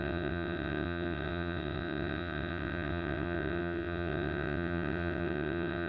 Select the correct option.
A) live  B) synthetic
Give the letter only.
B